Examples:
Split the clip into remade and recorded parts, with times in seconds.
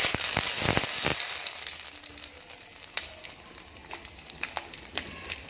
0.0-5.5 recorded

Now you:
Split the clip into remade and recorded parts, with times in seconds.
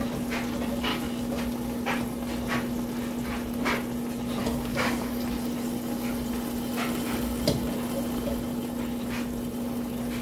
0.0-0.9 recorded; 0.9-1.4 remade; 1.4-4.5 recorded; 4.5-5.2 remade; 5.2-10.2 recorded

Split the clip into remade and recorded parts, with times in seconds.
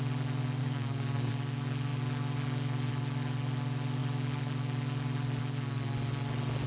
0.0-0.6 recorded; 0.6-1.3 remade; 1.3-6.7 recorded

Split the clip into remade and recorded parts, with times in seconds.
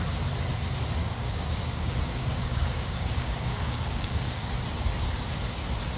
0.0-1.0 recorded; 1.0-4.5 remade; 4.5-6.0 recorded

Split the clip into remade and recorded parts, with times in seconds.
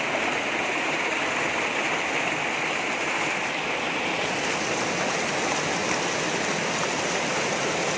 0.0-8.0 recorded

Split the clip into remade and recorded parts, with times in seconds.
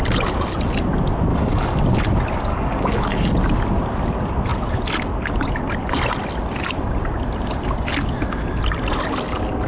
0.0-1.3 recorded; 1.3-1.8 remade; 1.8-2.5 recorded; 2.5-3.3 remade; 3.3-9.7 recorded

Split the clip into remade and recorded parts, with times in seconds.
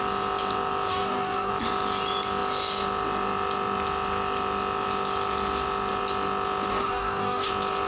0.0-0.9 recorded; 0.9-1.5 remade; 1.5-6.7 recorded; 6.7-7.5 remade; 7.5-7.9 recorded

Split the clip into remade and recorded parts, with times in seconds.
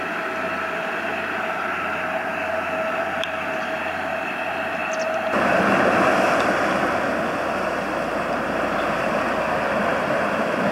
0.0-10.7 recorded